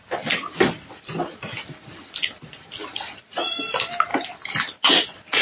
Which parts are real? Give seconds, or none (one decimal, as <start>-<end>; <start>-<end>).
0.0-5.4